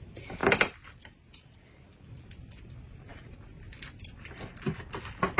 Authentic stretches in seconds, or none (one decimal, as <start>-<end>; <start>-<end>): 0.0-5.4